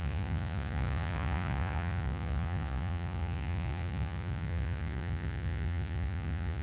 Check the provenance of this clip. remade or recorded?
remade